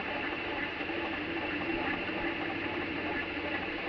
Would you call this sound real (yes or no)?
no